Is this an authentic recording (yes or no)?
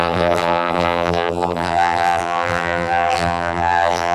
no